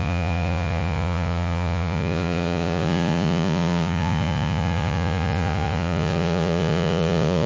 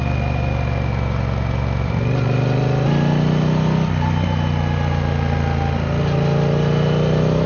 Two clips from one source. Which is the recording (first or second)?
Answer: second